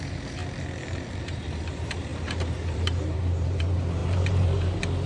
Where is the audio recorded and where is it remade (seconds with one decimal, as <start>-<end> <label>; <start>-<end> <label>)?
0.0-0.4 remade; 0.4-1.2 recorded; 1.2-5.1 remade